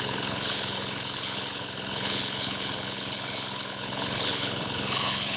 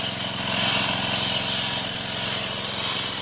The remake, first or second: first